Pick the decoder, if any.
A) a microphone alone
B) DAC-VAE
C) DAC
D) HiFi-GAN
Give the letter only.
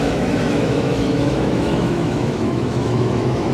B